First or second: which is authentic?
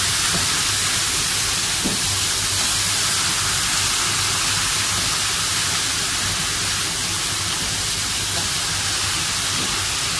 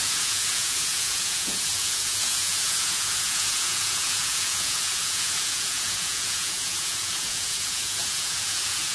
first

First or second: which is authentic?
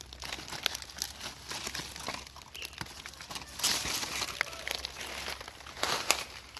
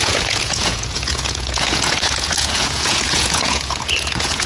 first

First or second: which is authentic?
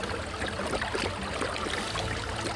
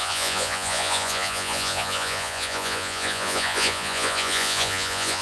first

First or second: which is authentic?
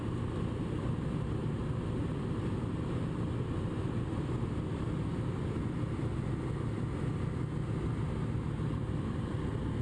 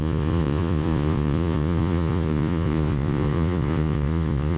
first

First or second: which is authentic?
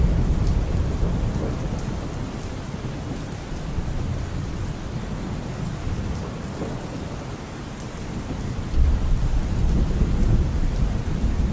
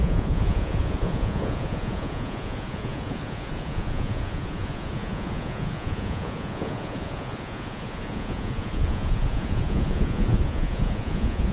first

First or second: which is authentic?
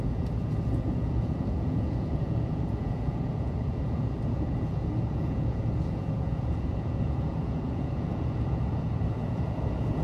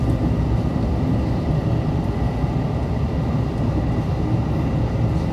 second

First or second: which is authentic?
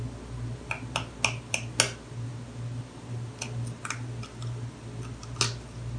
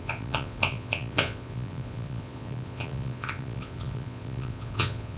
first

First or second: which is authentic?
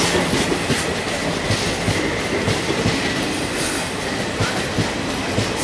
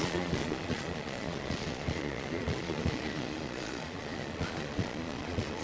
first